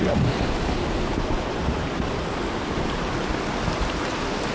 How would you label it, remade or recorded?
recorded